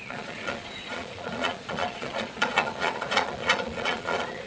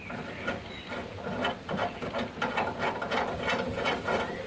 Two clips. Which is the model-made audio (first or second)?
first